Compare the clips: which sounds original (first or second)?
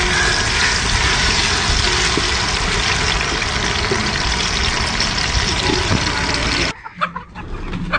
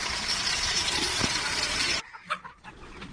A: first